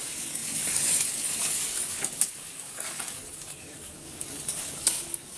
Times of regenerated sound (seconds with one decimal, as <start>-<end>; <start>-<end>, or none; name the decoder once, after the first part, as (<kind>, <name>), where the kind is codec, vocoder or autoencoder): 0.0-5.4 (codec, DAC)

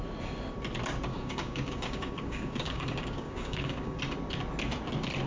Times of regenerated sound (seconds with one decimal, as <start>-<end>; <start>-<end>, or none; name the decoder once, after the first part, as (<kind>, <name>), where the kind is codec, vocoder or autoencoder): 1.1-4.0 (codec, DAC)

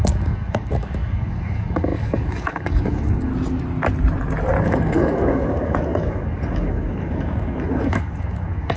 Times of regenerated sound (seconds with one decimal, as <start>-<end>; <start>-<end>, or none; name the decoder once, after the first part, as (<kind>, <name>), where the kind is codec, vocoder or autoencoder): 0.0-3.3 (codec, DAC); 4.6-8.8

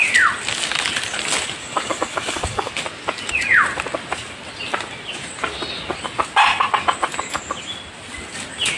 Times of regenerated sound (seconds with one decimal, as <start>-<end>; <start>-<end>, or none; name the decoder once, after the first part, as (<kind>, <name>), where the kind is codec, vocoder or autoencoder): 1.6-2.7 (codec, DAC)

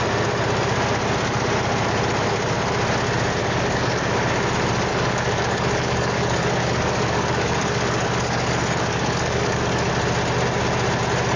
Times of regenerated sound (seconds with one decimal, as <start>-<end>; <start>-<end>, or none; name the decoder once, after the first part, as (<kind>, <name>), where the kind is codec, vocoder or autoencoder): 3.4-4.0 (codec, DAC); 4.9-9.9

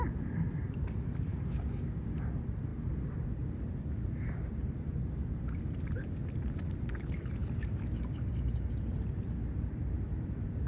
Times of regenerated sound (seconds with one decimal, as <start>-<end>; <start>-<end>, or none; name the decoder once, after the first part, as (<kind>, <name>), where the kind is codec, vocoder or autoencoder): 1.3-2.3 (codec, DAC)

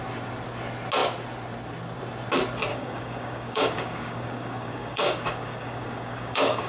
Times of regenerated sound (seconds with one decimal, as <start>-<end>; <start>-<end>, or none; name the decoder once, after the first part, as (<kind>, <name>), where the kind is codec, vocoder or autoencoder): 2.7-6.7 (codec, DAC)